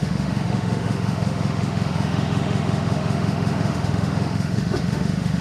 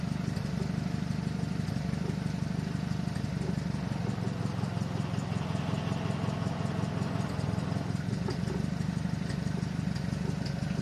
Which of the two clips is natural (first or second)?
second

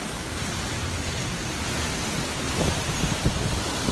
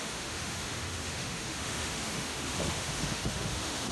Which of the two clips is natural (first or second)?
first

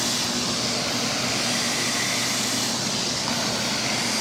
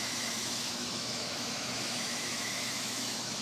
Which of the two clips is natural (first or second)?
first